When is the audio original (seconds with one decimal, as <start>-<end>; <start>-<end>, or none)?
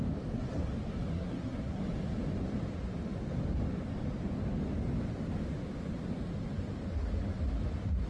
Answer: 0.0-1.1; 1.8-8.1